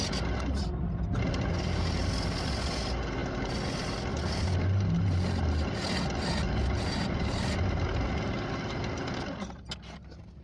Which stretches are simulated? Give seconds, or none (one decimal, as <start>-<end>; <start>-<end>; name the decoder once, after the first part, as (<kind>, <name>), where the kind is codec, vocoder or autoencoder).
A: none